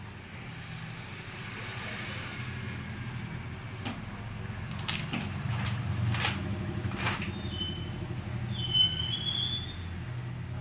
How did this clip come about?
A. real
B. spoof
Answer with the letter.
A